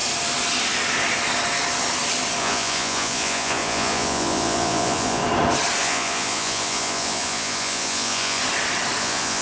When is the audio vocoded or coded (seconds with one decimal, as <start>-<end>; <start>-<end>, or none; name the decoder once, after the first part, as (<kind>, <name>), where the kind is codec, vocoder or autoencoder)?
2.4-5.2 (vocoder, Vocos); 5.8-8.4; 9.0-9.4